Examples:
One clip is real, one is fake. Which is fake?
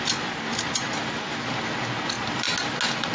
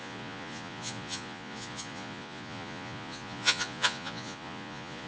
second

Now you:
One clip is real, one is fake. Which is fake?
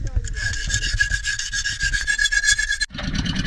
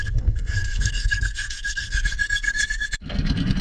second